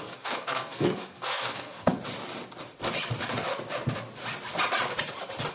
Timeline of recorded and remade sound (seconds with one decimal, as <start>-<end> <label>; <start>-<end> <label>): 0.0-2.0 remade; 2.0-5.5 recorded